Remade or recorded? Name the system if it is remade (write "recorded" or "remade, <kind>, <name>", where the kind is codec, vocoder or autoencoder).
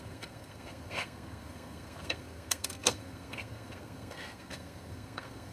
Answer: remade, codec, SNAC